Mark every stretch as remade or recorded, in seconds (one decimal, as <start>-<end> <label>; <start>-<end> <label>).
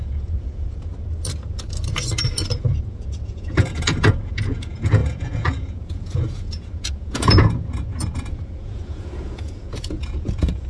0.0-0.9 remade; 0.9-2.9 recorded; 2.9-10.7 remade